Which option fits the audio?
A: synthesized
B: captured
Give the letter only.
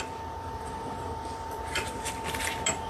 A